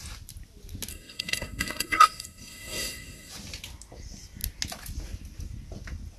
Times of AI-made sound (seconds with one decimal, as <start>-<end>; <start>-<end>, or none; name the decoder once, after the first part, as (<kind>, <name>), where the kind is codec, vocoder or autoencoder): 0.9-3.3 (codec, SNAC)